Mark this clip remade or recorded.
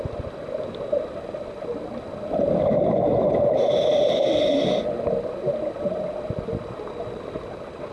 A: recorded